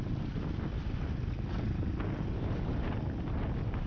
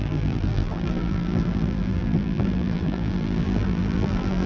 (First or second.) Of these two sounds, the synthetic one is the second